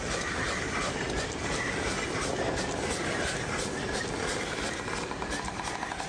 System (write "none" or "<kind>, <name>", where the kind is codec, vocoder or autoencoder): none